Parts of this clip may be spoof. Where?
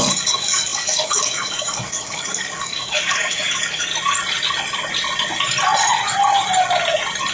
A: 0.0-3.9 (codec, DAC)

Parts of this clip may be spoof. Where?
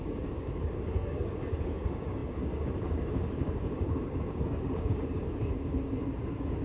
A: 0.0-6.6 (codec, DAC)